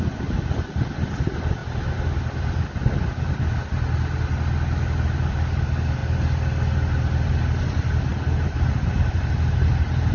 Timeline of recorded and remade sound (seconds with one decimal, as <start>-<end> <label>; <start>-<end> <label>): 0.0-10.1 recorded